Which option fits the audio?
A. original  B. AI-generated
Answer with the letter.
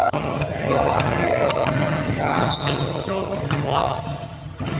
B